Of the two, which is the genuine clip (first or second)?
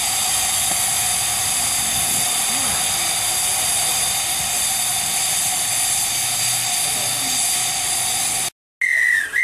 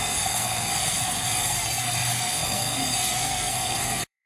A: first